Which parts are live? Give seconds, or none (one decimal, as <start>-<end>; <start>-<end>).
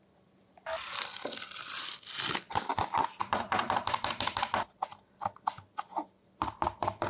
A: 2.7-3.2